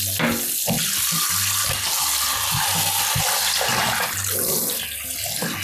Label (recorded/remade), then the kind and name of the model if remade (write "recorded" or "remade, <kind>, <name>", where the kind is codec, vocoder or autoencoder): recorded